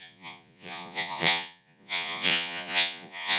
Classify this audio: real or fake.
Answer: fake